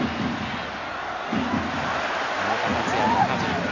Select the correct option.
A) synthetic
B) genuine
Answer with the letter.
B